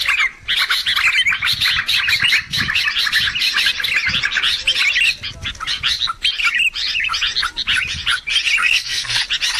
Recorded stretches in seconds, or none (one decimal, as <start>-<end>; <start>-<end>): 0.0-8.6; 9.2-9.6